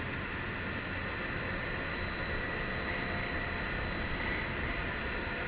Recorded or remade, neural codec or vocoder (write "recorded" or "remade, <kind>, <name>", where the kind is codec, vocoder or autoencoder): recorded